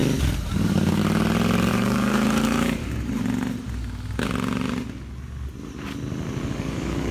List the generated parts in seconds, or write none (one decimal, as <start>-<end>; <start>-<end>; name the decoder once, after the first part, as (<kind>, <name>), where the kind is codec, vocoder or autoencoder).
0.5-1.0 (codec, DAC); 1.7-2.8; 6.5-7.1